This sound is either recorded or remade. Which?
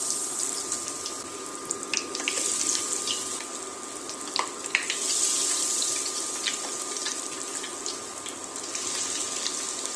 recorded